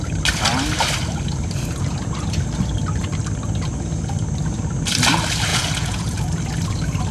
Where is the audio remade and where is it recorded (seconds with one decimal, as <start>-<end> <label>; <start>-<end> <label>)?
0.0-5.5 recorded; 5.5-6.2 remade; 6.2-7.1 recorded